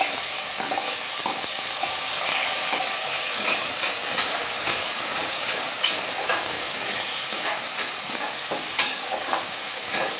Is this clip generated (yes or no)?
yes